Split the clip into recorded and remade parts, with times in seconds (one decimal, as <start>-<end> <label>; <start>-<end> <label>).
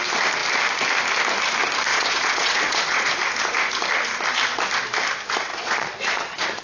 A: 0.0-1.9 recorded; 1.9-3.1 remade; 3.1-5.5 recorded; 5.5-6.6 remade